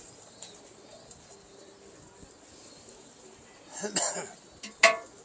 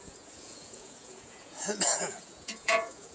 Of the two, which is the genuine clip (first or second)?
first